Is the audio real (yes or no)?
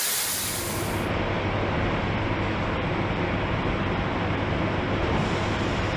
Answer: yes